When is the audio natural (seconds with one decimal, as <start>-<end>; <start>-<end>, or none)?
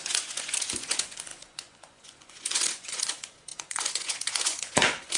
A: none